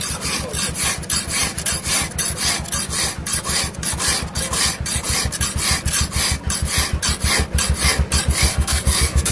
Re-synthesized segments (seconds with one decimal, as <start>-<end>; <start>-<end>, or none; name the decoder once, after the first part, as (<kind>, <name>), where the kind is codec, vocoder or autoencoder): 8.5-9.3 (codec, SNAC)